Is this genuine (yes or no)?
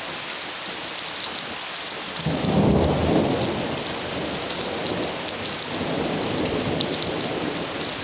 yes